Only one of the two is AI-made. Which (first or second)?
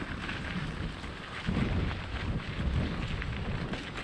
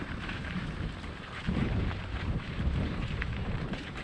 second